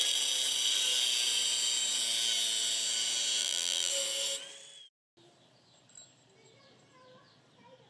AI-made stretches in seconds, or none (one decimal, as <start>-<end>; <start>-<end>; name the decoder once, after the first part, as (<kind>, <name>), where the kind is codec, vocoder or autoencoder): 3.4-3.9 (vocoder, BigVGAN v2)